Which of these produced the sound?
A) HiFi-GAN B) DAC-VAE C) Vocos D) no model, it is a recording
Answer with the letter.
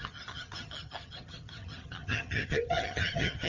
A